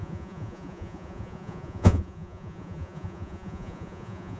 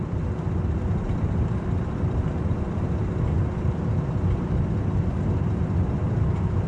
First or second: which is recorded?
second